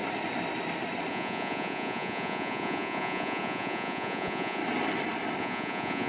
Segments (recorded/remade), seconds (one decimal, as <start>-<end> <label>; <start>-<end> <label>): 0.0-1.1 recorded; 1.1-4.6 remade; 4.6-5.4 recorded; 5.4-6.1 remade